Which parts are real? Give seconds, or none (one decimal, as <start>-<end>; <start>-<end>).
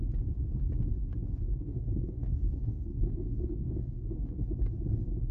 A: 0.0-1.6; 4.4-5.3